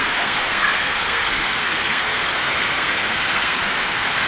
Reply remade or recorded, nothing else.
remade